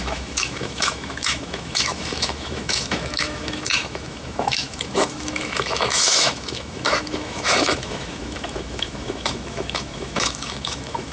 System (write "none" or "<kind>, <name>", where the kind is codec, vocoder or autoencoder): autoencoder, DAC-VAE